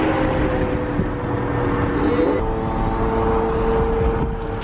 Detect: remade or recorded recorded